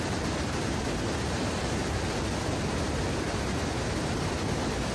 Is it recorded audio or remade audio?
recorded